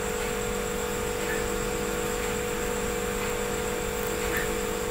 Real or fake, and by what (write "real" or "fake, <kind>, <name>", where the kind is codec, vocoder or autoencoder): real